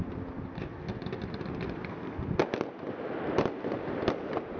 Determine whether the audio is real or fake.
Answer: real